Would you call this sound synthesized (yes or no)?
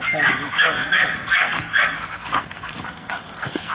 yes